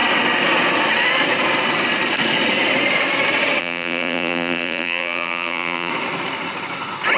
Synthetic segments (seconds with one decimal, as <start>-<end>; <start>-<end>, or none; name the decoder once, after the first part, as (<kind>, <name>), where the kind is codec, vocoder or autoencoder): 3.6-5.9 (vocoder, BigVGAN v2)